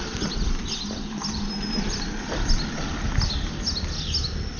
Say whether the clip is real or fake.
real